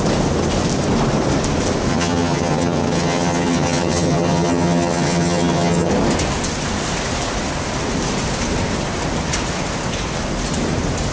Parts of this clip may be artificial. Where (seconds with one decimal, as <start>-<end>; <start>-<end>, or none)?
1.9-5.9